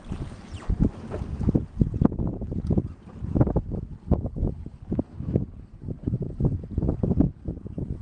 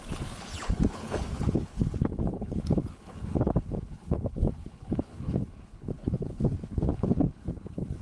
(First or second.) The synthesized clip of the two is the second